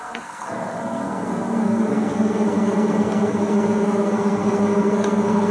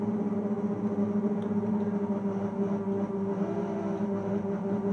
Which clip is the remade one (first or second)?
first